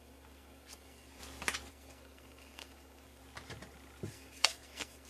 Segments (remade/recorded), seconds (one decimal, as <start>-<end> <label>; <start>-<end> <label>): 0.0-1.2 remade; 1.2-1.7 recorded; 1.7-3.2 remade; 3.2-4.1 recorded; 4.1-5.1 remade